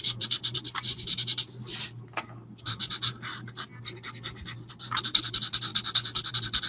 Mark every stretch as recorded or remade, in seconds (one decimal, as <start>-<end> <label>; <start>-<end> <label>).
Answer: 0.0-1.7 remade; 1.7-2.6 recorded; 2.6-3.7 remade; 3.7-4.7 recorded; 4.7-5.7 remade; 5.7-6.3 recorded; 6.3-6.7 remade